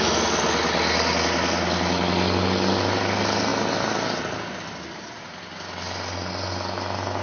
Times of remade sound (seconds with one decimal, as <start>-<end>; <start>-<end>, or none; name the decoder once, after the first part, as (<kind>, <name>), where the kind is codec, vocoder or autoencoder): none